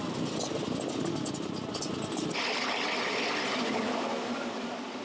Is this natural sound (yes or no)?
yes